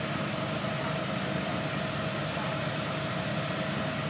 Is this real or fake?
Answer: real